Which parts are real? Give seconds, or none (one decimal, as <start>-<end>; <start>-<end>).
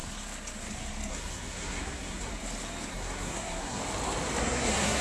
0.0-1.1; 2.3-2.9; 3.8-4.4